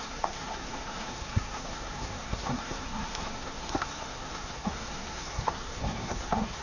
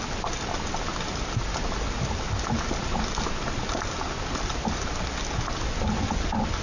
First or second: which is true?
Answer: second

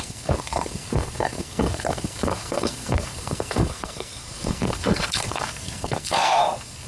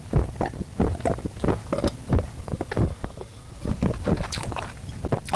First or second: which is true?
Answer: second